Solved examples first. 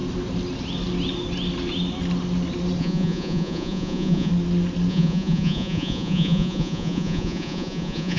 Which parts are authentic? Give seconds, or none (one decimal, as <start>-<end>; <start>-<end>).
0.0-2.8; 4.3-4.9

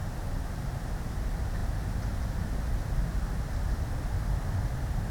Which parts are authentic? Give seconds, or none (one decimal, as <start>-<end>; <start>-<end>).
0.0-5.1

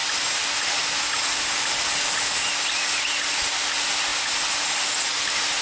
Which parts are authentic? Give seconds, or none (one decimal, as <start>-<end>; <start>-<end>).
0.0-5.6